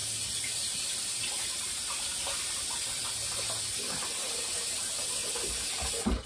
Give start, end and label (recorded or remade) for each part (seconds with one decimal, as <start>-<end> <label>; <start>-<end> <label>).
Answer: 0.0-6.3 recorded